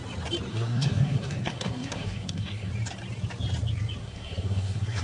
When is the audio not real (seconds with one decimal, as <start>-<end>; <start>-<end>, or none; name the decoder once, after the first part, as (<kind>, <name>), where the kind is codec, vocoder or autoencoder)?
0.5-2.7 (codec, SNAC); 4.0-5.0